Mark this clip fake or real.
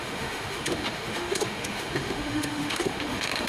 fake